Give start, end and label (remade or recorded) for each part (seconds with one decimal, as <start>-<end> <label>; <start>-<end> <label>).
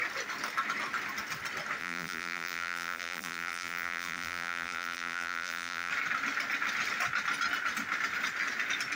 0.0-1.8 recorded; 1.8-5.9 remade; 5.9-9.0 recorded